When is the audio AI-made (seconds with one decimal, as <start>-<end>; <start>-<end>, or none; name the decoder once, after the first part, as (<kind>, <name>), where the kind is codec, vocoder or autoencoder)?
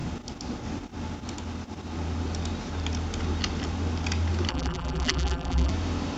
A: 4.5-5.7 (vocoder, BigVGAN v2)